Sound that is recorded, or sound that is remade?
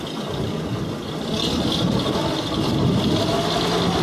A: recorded